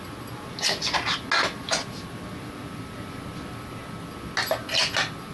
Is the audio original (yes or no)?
yes